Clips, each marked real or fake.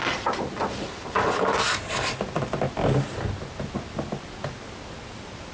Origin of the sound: real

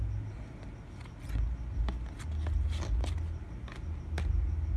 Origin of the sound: real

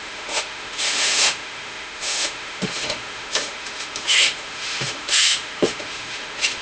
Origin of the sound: fake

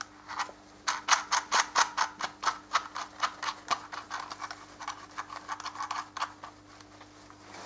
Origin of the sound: real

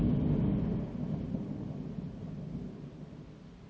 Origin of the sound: real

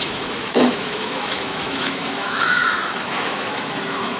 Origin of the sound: fake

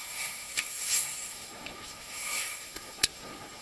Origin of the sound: fake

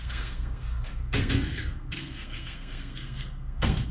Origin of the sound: fake